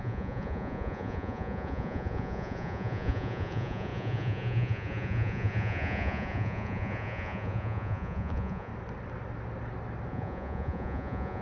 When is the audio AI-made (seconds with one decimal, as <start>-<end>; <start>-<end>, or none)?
0.0-8.7; 10.1-11.4